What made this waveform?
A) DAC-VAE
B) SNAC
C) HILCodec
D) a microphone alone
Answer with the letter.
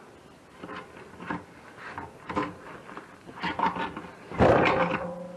D